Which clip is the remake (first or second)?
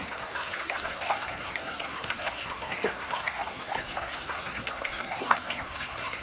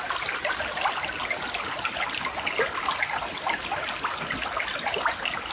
first